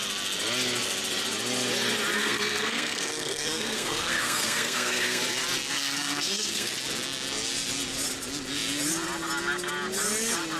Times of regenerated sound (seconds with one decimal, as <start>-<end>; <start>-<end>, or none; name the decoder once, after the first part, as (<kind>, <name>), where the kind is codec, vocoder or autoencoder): 2.2-5.2 (codec, SNAC); 5.7-6.7